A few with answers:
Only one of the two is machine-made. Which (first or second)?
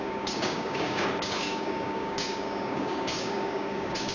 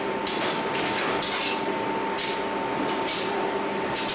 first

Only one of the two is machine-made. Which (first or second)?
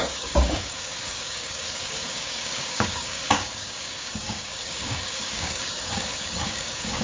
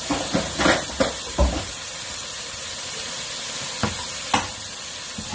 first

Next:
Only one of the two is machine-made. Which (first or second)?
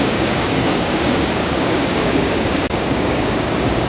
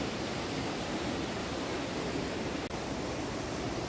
first